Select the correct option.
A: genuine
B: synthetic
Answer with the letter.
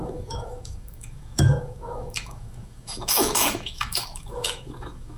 B